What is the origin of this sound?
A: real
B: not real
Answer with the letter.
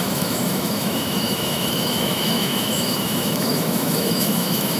B